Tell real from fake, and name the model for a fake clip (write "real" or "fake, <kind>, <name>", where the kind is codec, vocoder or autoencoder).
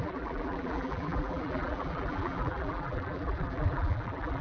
fake, vocoder, BigVGAN v2